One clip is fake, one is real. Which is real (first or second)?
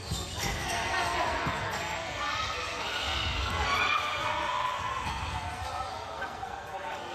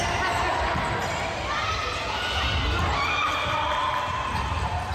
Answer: second